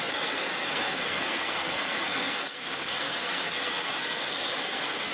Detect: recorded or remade remade